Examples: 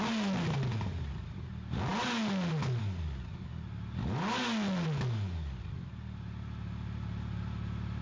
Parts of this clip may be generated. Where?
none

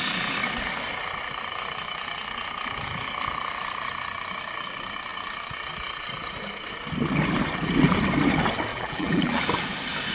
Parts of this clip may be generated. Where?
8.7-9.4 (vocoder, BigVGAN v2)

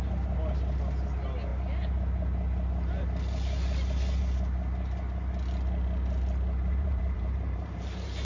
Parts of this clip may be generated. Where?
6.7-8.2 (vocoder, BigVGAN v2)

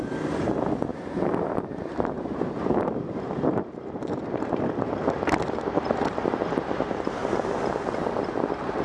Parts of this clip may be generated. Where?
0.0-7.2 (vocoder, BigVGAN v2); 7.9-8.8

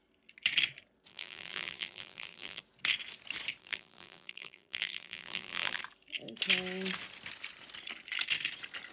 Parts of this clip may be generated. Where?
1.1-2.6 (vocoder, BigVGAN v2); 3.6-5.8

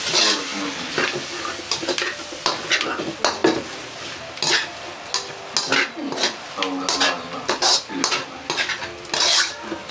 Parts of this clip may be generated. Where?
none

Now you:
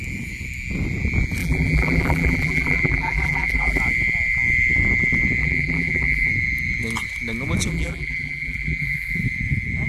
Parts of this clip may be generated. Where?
1.4-3.8 (vocoder, BigVGAN v2); 5.4-6.3; 7.7-9.2

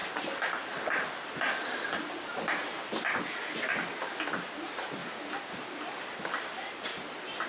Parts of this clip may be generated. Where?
4.5-6.9 (vocoder, BigVGAN v2)